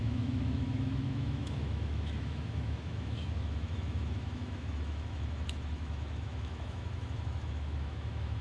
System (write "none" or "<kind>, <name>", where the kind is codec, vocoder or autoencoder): autoencoder, DAC-VAE